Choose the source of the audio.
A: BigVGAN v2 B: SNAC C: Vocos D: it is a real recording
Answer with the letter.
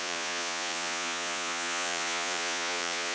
C